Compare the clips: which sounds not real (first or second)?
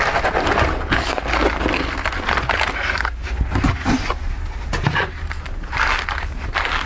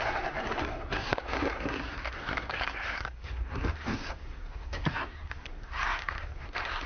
second